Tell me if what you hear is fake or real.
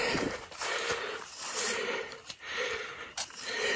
fake